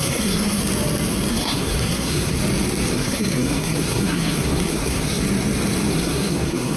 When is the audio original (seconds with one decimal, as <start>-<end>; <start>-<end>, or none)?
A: 0.6-1.3; 2.4-2.9; 5.2-5.9